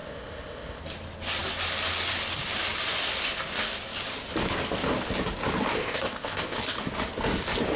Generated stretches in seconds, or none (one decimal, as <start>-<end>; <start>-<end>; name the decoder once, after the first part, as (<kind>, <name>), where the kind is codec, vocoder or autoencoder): 0.0-0.8 (codec, ZipCodec); 5.8-6.6